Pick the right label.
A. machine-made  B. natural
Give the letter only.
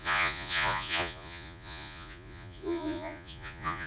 A